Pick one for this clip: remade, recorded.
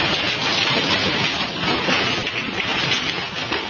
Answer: recorded